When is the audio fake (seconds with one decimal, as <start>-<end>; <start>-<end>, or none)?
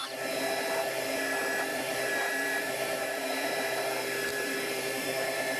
1.7-3.9; 4.3-5.6